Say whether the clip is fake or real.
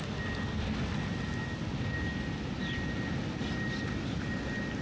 real